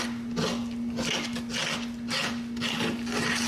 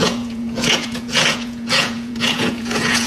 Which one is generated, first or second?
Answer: second